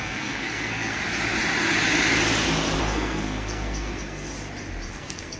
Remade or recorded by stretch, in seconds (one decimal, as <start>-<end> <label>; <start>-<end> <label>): 0.0-1.0 remade; 1.0-2.8 recorded; 2.8-4.3 remade; 4.3-4.9 recorded; 4.9-5.4 remade